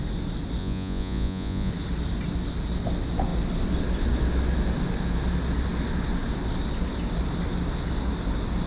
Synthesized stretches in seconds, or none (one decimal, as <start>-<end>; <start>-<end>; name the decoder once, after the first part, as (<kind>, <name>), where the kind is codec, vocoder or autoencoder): 0.6-1.7 (vocoder, Vocos)